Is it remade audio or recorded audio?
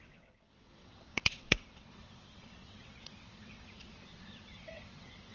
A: remade